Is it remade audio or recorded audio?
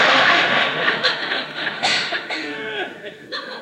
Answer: remade